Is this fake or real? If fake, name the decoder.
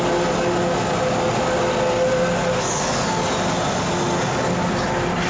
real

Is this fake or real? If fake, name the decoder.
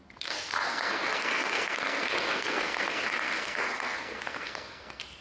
fake, codec, SNAC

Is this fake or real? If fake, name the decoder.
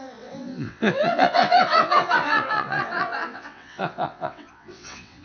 fake, vocoder, WaveNeXt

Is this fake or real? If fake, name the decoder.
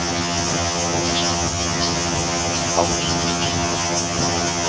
fake, vocoder, HiFi-GAN